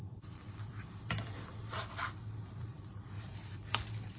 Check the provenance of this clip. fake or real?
fake